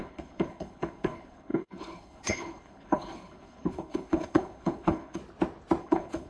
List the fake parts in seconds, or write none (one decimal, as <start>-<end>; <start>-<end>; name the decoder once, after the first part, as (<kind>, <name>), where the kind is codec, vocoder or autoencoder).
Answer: 0.0-5.2 (codec, HILCodec); 5.8-6.3